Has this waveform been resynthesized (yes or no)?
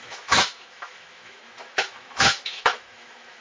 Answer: yes